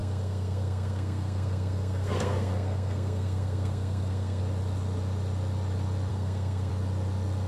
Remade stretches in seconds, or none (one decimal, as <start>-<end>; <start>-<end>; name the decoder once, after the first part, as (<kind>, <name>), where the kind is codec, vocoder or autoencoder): 0.0-4.4 (codec, SNAC); 6.1-6.7